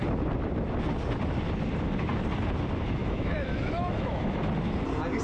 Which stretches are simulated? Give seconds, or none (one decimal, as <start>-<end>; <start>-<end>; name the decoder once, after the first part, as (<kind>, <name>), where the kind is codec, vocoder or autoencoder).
3.0-4.4 (autoencoder, DAC-VAE)